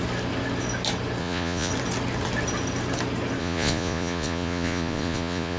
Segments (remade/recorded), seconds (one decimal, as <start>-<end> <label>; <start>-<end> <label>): 0.0-1.2 recorded; 1.2-1.7 remade; 1.7-3.4 recorded; 3.4-5.6 remade